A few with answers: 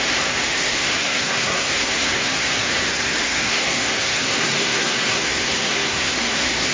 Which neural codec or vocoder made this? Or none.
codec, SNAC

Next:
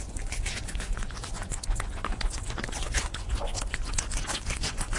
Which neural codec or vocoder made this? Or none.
vocoder, Vocos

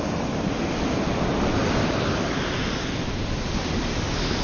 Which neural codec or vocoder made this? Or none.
none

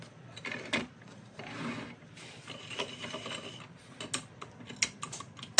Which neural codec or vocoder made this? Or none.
none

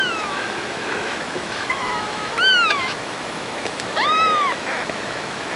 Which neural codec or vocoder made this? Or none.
autoencoder, DAC-VAE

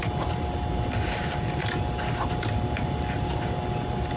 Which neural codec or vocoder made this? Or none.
none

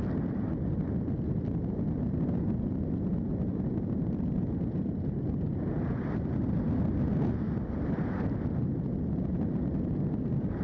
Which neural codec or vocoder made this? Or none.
none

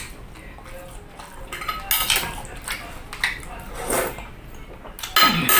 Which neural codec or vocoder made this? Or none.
none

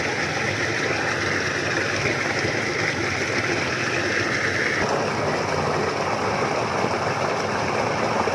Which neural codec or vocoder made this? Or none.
none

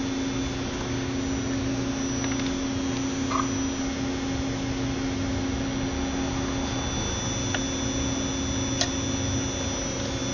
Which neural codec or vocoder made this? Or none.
none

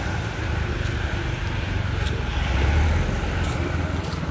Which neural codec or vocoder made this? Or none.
none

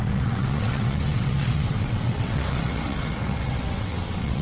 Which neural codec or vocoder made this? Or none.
vocoder, WaveNeXt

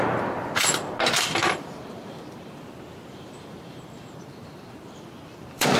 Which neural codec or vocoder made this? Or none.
vocoder, BigVGAN v2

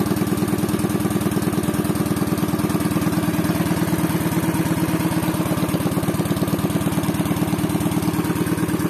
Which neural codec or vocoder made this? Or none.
none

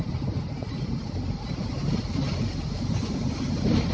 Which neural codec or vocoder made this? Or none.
none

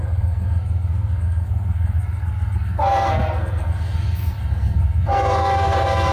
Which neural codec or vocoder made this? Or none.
codec, SNAC